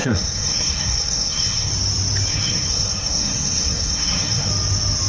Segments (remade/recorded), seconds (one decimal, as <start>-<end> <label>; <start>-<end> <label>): 0.0-1.7 remade; 1.7-2.3 recorded; 2.3-4.5 remade; 4.5-5.1 recorded